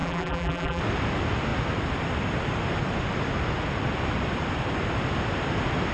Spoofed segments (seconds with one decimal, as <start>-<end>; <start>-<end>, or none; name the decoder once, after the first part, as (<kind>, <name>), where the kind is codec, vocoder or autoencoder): 0.0-0.8 (vocoder, BigVGAN v2)